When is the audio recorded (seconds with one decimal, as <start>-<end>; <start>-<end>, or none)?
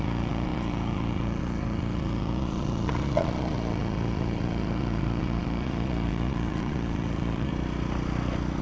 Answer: 7.5-8.6